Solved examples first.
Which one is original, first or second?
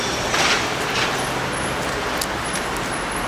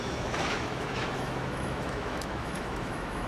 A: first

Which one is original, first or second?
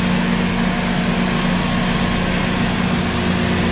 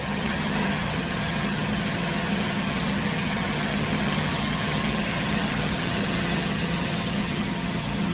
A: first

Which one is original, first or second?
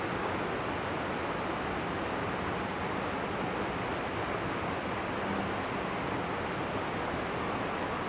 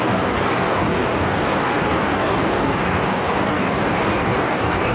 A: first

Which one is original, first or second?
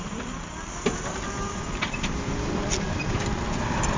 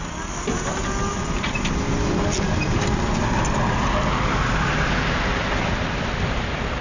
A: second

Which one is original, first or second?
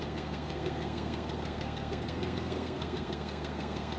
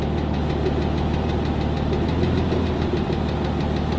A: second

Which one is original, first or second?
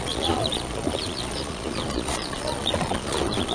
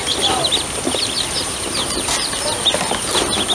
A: second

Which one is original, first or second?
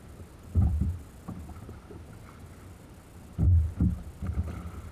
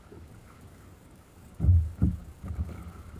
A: first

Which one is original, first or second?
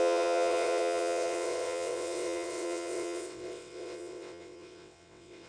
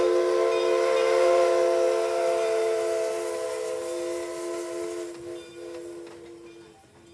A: second